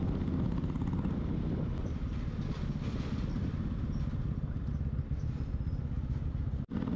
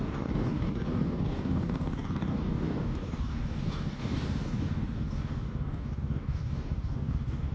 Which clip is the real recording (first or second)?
first